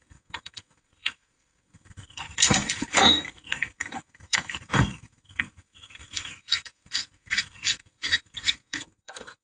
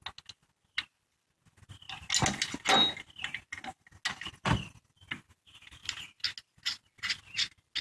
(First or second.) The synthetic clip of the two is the first